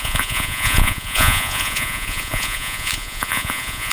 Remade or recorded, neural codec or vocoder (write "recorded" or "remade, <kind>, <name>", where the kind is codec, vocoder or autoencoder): remade, vocoder, Vocos